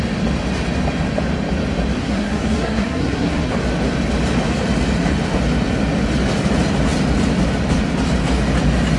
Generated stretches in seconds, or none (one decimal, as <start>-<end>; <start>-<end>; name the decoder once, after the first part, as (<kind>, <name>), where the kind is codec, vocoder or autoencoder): 2.0-3.5 (codec, SNAC)